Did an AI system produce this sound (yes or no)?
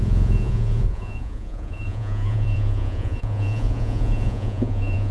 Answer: yes